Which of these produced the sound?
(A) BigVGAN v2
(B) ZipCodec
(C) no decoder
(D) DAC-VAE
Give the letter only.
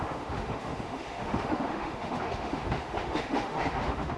D